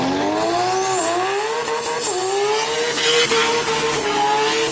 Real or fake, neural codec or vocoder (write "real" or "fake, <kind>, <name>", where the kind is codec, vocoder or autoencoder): real